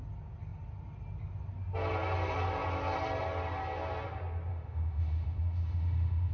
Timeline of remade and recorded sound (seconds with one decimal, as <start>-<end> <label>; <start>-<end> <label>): 0.0-4.5 recorded; 4.5-6.3 remade